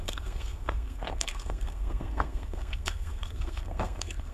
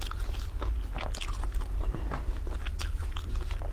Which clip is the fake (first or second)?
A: first